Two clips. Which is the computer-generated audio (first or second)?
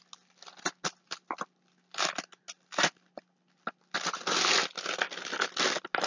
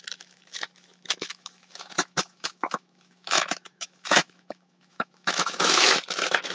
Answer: second